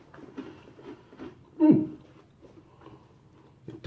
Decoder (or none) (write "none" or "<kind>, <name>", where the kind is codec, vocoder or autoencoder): none